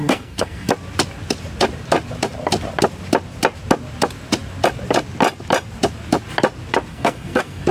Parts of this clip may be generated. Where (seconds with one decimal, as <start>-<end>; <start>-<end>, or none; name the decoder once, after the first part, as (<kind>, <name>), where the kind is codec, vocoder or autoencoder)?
0.0-0.7 (codec, SNAC); 6.9-7.7